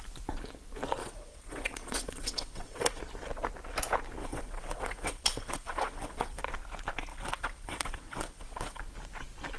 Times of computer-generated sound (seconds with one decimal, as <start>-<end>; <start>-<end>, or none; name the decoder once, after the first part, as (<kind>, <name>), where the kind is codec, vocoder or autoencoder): 1.0-3.0 (vocoder, WaveNeXt); 4.2-6.4; 7.1-8.8